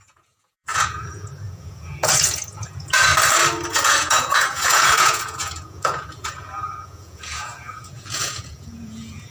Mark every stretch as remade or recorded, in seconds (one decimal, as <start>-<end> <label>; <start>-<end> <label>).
0.0-3.1 remade; 3.1-3.7 recorded; 3.7-9.3 remade